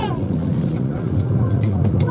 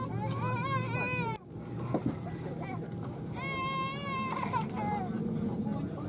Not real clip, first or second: first